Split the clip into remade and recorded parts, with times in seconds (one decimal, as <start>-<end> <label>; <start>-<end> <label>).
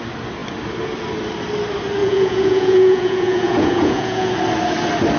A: 0.0-2.0 recorded; 2.0-4.3 remade; 4.3-5.2 recorded